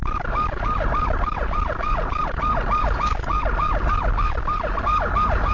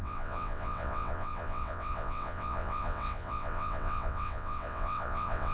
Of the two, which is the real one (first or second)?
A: first